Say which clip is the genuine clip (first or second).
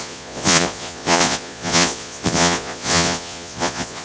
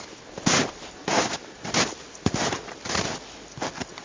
second